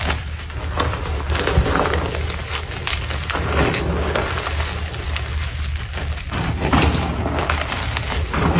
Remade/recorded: recorded